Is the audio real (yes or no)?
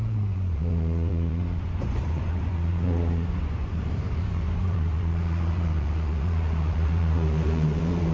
no